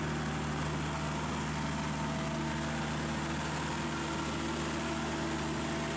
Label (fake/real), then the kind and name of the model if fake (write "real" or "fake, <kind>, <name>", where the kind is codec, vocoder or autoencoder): real